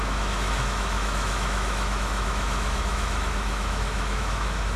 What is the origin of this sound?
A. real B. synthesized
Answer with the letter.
B